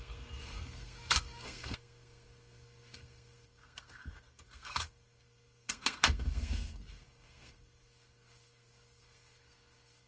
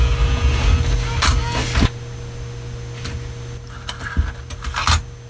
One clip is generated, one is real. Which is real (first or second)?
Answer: second